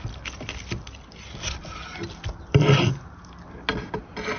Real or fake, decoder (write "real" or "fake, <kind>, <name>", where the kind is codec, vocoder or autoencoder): real